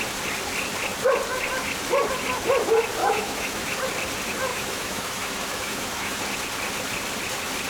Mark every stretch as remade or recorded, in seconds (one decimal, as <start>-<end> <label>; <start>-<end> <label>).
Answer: 0.0-3.0 recorded; 3.0-3.7 remade; 3.7-4.5 recorded; 4.5-6.2 remade; 6.2-7.7 recorded